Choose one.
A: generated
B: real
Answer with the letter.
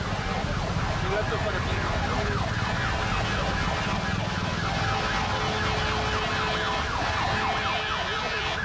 B